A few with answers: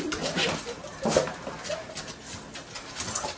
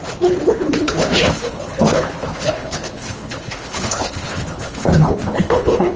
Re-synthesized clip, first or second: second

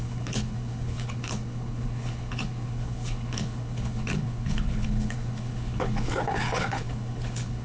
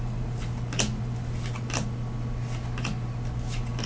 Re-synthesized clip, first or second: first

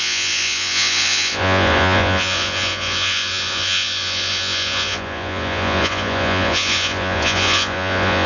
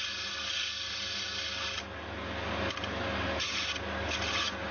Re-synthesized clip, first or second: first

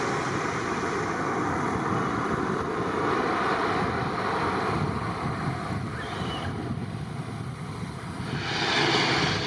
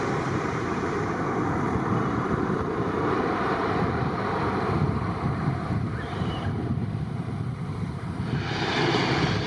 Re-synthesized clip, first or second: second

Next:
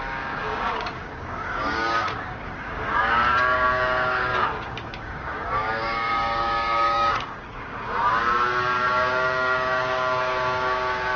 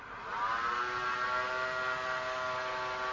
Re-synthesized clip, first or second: first